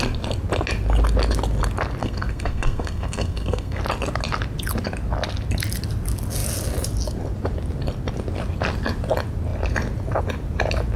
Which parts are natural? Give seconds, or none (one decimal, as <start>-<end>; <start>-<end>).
0.0-2.0; 3.8-11.0